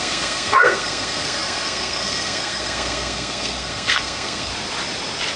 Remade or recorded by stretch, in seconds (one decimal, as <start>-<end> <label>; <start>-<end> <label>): 0.0-4.5 remade; 4.5-5.4 recorded